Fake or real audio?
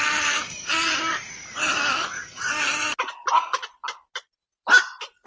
real